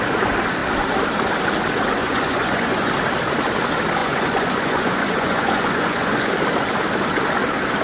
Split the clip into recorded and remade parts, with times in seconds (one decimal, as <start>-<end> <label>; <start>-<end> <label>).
0.0-2.0 recorded; 2.0-2.9 remade; 2.9-4.0 recorded; 4.0-6.3 remade; 6.3-7.8 recorded